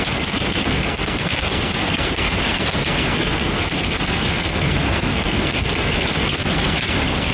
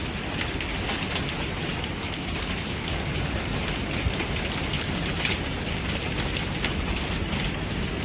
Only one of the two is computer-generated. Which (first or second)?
first